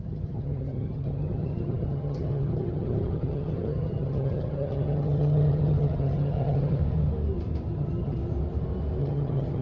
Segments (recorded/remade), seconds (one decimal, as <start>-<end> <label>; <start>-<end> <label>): 0.0-6.8 remade; 6.8-7.7 recorded; 7.7-8.2 remade; 8.2-9.0 recorded; 9.0-9.6 remade